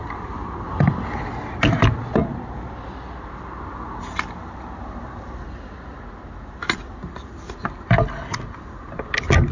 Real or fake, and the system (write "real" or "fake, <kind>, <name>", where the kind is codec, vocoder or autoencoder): real